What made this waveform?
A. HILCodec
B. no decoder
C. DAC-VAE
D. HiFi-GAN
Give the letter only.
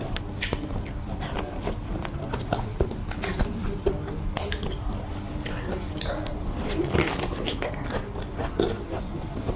B